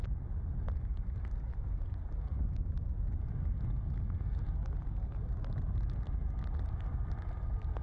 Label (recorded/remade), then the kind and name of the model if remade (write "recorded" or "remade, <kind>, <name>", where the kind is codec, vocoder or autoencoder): recorded